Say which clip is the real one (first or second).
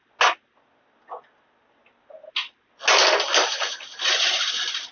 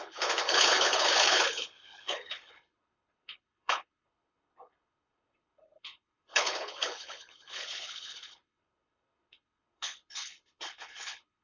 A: first